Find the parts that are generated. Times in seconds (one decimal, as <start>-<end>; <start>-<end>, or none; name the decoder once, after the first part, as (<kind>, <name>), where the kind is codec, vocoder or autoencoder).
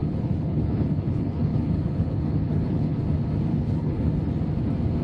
0.0-3.0 (codec, HILCodec); 3.5-4.1